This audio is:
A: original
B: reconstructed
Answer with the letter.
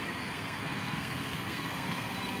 B